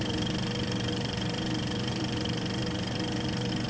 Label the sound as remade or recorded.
remade